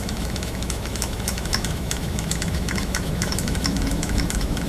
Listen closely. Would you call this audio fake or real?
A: fake